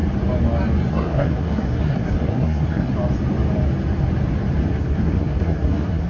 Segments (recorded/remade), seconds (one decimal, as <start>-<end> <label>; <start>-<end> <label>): 0.0-0.9 recorded; 0.9-2.9 remade; 2.9-4.7 recorded; 4.7-6.1 remade